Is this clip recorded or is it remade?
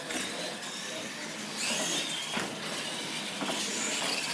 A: recorded